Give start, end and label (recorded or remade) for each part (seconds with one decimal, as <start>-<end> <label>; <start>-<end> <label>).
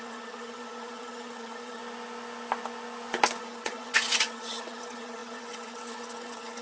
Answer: 0.0-1.8 remade; 1.8-3.4 recorded; 3.4-6.6 remade